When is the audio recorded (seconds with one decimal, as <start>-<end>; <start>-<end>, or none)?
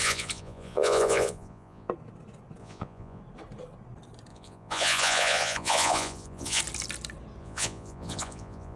1.9-2.6; 3.2-4.3; 6.6-7.4